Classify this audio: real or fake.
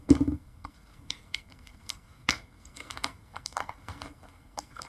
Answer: fake